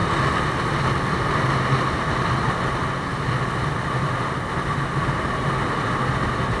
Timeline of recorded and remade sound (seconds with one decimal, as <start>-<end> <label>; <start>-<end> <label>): 0.0-6.6 recorded